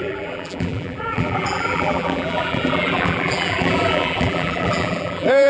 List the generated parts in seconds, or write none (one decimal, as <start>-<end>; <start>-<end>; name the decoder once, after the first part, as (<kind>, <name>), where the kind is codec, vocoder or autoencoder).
0.0-5.5 (vocoder, BigVGAN v2)